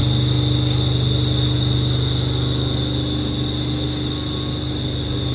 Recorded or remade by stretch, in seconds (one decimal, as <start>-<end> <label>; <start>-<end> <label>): 0.0-5.3 recorded